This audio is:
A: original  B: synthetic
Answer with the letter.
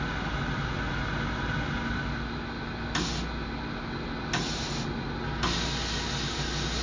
A